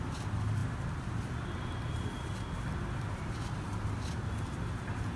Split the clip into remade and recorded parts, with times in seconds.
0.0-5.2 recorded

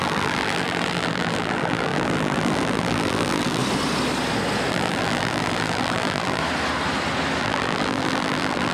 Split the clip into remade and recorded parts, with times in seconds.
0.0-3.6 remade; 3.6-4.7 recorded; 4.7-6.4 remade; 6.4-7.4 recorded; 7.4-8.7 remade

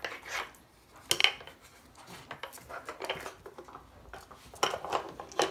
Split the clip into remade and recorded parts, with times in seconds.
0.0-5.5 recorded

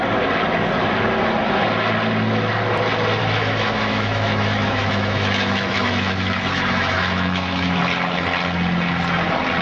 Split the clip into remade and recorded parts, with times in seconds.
0.0-3.2 recorded; 3.2-7.8 remade; 7.8-9.6 recorded

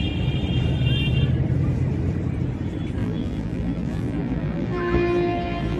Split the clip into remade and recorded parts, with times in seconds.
0.0-3.0 recorded; 3.0-5.8 remade